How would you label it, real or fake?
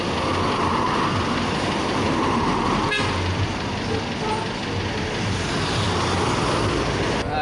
real